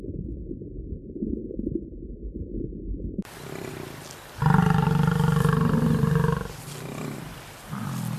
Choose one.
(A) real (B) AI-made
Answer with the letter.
A